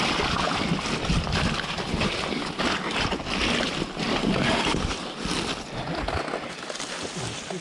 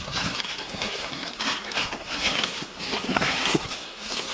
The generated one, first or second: second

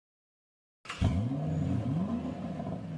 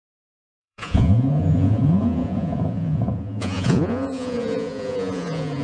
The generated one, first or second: second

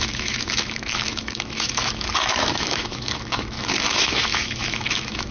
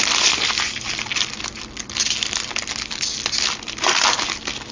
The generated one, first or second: first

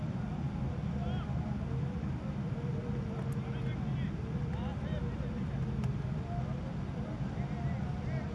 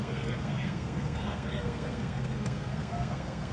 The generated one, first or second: second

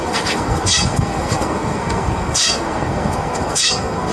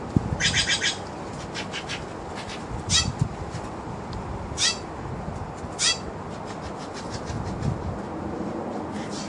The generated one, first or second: first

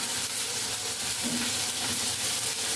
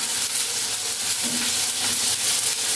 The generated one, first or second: first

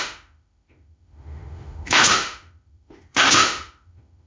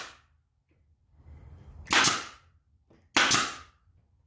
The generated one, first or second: first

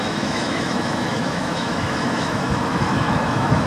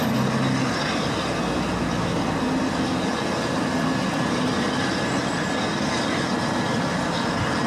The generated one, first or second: first